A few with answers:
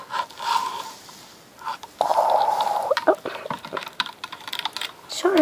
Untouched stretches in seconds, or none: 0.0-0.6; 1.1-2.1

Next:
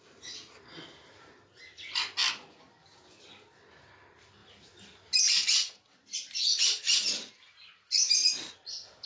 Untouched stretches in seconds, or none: 0.0-6.5; 8.3-9.1

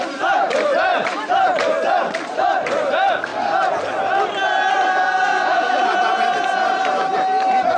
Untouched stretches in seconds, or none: 3.3-4.7

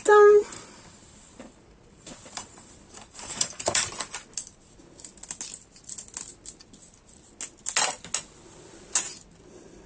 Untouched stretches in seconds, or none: 0.0-0.9; 3.9-9.9